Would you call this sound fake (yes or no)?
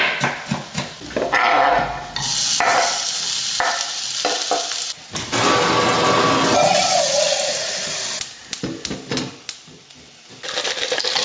no